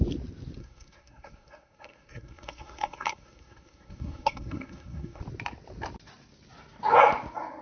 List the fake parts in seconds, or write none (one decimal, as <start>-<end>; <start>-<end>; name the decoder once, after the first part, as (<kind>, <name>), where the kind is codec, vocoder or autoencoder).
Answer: 0.6-5.2 (codec, SNAC)